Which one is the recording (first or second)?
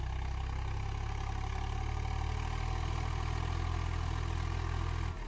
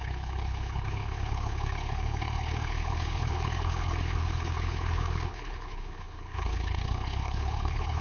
first